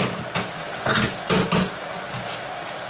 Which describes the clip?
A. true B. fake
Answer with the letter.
A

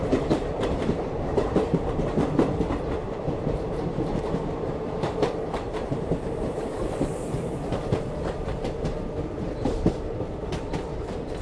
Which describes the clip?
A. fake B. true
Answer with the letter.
A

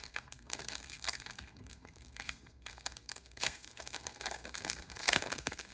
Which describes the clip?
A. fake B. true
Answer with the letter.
A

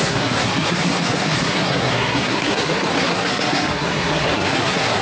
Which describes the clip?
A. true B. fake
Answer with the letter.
B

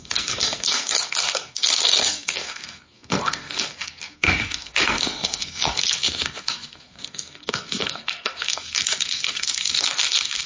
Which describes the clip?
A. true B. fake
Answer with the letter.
B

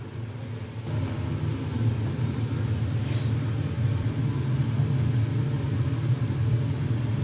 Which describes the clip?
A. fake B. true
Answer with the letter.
B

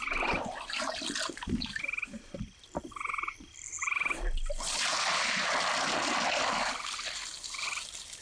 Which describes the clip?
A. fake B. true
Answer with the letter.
B